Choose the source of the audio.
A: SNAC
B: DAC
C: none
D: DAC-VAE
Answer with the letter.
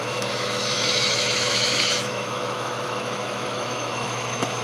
D